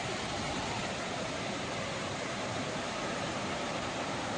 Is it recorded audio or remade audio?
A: recorded